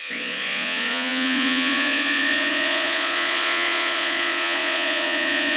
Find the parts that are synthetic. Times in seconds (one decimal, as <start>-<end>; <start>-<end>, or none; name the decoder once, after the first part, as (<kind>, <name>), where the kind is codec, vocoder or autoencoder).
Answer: 0.0-5.6 (vocoder, Vocos)

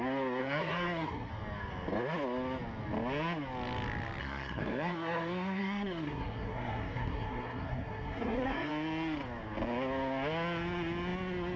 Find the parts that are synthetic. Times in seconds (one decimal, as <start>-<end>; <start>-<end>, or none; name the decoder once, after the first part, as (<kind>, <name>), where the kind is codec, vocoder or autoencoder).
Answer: 0.4-1.3 (codec, SNAC); 4.2-8.7

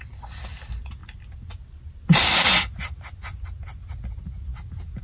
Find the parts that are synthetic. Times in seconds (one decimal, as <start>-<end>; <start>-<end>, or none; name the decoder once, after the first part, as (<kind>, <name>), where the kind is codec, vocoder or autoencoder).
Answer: none

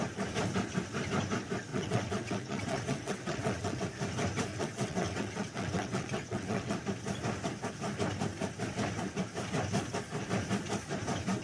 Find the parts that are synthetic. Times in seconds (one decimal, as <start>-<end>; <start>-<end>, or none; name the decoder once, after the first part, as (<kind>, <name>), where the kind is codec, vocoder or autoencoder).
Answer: 1.7-3.8 (vocoder, WaveNeXt); 4.5-6.8

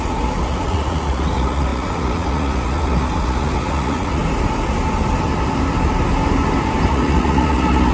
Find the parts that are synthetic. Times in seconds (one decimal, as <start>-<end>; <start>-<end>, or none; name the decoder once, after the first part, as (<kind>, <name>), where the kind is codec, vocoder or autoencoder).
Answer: 0.0-4.2 (vocoder, Vocos); 6.9-7.9

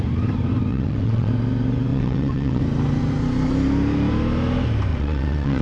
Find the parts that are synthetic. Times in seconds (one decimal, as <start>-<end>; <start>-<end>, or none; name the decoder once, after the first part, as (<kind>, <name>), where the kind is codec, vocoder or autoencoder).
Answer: 0.7-1.3 (vocoder, WaveNeXt); 1.9-2.6; 4.9-5.6